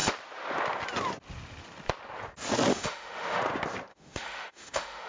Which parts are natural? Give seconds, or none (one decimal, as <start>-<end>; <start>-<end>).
0.0-2.7; 3.4-3.9

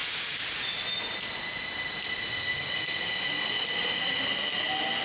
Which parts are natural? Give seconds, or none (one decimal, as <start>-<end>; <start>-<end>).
0.0-5.0

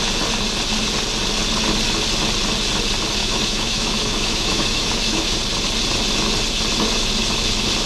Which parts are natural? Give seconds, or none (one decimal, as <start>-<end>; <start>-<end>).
0.0-3.2; 5.4-7.9

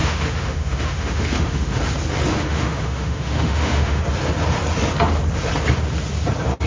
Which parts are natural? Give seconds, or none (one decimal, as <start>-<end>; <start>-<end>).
1.8-2.3; 4.0-6.7

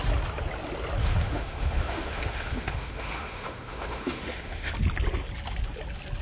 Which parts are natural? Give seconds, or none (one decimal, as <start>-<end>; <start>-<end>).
0.0-1.0; 4.7-6.2

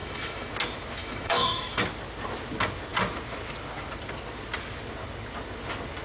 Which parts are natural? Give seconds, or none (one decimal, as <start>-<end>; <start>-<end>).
0.5-1.0; 1.8-6.0

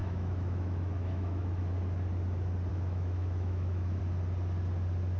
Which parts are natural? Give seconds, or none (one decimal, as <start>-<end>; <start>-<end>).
1.6-2.7; 4.0-5.2

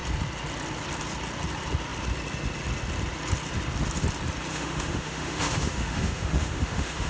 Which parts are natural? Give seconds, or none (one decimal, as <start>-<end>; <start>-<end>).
0.0-4.5